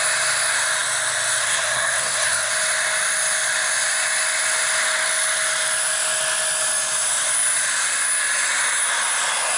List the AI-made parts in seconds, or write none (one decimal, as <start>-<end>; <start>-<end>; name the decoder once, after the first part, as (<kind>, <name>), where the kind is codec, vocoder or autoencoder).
1.4-2.5 (codec, SNAC)